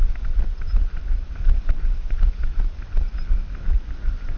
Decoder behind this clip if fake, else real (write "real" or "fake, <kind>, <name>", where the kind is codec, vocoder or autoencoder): real